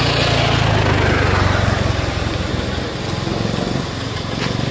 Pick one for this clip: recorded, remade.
recorded